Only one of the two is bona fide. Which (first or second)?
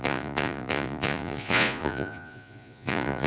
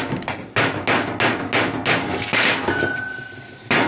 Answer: second